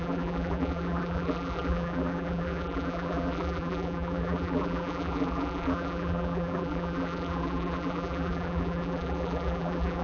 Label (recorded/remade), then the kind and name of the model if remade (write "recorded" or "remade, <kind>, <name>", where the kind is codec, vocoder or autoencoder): remade, vocoder, BigVGAN v2